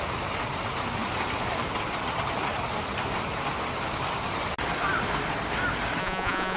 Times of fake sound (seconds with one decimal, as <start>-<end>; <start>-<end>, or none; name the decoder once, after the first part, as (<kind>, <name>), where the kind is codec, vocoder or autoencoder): 6.0-6.6 (vocoder, Vocos)